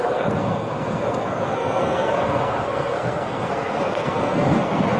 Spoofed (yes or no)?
yes